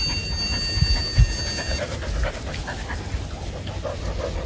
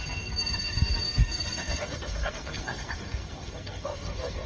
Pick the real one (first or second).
first